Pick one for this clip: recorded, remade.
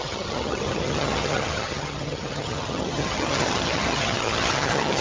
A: remade